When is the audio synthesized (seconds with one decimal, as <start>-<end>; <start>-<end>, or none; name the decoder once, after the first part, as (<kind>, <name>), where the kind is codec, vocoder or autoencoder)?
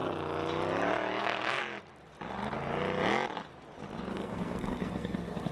1.2-1.6 (codec, SNAC); 4.1-5.5